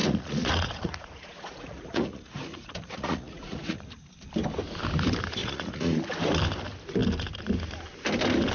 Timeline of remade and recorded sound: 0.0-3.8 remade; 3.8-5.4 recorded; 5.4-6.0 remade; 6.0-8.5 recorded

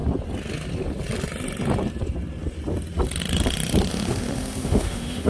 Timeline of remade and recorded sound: 0.0-3.9 recorded; 3.9-5.3 remade

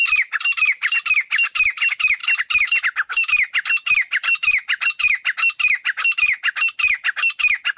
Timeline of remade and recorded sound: 0.0-7.8 recorded

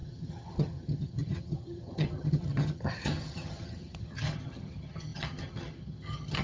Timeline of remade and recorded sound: 0.0-6.4 remade

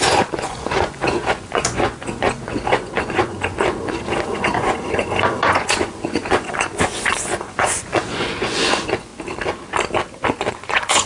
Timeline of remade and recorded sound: 0.0-9.1 remade; 9.1-10.5 recorded; 10.5-11.1 remade

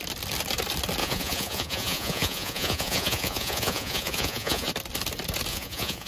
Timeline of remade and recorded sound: 0.0-1.0 recorded; 1.0-4.7 remade; 4.7-5.5 recorded; 5.5-6.1 remade

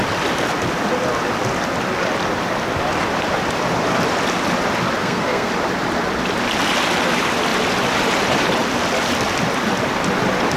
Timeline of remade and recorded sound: 0.0-5.0 recorded; 5.0-5.5 remade; 5.5-10.6 recorded